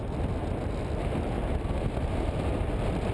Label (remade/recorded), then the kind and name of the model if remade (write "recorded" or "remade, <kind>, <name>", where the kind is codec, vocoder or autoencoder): recorded